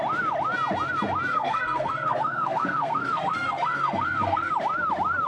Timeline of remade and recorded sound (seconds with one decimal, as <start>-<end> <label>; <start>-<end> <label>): 0.0-1.3 recorded; 1.3-4.5 remade; 4.5-5.3 recorded